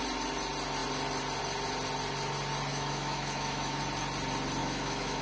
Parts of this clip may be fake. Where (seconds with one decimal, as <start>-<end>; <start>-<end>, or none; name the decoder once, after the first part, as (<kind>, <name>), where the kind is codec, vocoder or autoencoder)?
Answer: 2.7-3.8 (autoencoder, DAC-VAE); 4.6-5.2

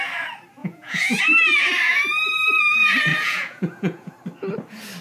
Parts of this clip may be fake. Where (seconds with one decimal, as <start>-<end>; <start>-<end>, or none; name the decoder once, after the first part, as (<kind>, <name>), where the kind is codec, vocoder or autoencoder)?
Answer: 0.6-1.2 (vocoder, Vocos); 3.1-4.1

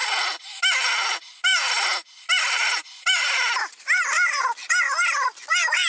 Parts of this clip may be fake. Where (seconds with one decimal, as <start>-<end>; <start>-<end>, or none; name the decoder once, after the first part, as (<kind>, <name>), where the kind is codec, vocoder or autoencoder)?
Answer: 1.5-4.4 (vocoder, BigVGAN v2)

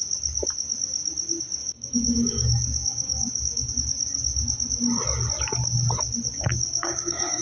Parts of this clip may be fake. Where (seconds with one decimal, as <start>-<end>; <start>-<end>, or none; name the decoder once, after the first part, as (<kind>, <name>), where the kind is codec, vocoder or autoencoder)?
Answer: 1.6-3.7 (codec, DAC); 6.3-7.4

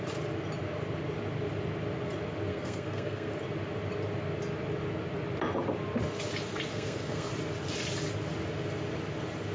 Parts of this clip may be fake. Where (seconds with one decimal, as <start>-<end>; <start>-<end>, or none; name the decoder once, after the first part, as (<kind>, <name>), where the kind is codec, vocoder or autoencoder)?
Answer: 2.5-3.3 (codec, SNAC); 6.7-7.3

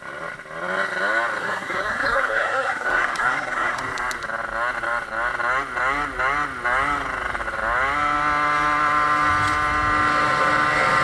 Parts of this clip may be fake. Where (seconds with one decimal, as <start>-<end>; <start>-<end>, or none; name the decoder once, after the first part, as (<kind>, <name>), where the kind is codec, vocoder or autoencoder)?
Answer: 1.4-3.8 (codec, SNAC)